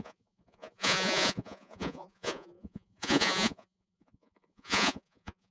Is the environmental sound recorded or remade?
remade